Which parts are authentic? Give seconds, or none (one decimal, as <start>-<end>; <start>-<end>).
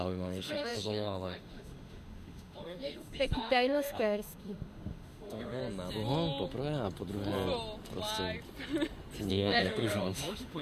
5.6-9.3